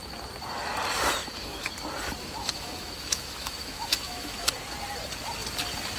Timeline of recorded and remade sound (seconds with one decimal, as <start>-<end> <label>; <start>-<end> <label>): 0.0-1.2 recorded; 1.2-1.7 remade; 1.7-2.4 recorded; 2.4-4.5 remade; 4.5-6.0 recorded